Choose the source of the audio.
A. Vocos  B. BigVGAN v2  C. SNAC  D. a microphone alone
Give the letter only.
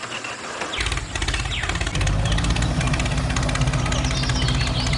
D